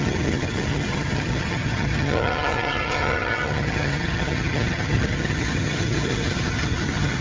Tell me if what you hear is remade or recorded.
remade